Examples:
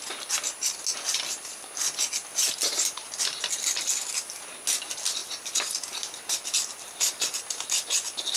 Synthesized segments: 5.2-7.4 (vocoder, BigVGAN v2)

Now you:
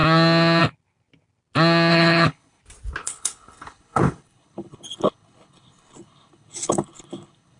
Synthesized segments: 1.9-2.6 (codec, HILCodec); 3.0-7.6

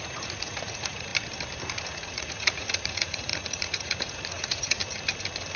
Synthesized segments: 0.0-1.1 (vocoder, Vocos); 1.9-4.8

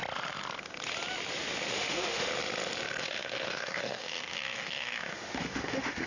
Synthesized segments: 1.7-2.3 (autoencoder, DAC-VAE); 3.0-6.1

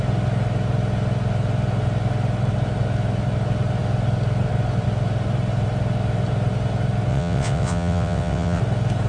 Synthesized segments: 7.1-8.6 (vocoder, WaveNeXt)

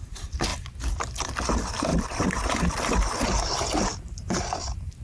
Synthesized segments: none

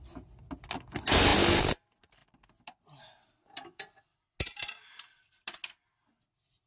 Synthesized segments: none

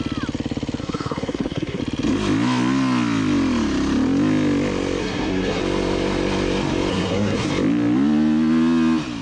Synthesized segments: 0.8-1.8 (codec, SNAC); 5.0-5.6; 6.9-7.5